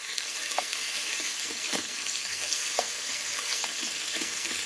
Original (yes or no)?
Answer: no